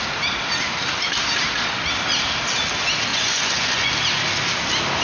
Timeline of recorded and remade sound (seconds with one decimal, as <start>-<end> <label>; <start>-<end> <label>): 0.0-3.1 recorded; 3.1-3.9 remade; 3.9-5.0 recorded